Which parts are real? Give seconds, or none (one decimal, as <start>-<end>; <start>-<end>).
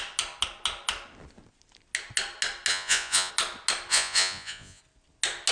0.0-2.7; 3.3-3.9; 4.8-5.5